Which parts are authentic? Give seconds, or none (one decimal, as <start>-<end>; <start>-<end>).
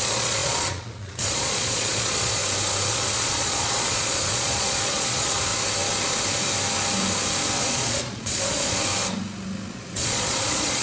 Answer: 2.4-2.9; 5.5-7.6; 8.8-9.7